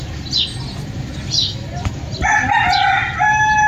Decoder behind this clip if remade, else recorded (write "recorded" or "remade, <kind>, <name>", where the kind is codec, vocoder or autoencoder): recorded